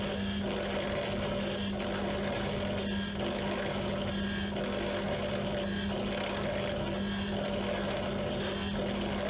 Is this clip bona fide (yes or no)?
yes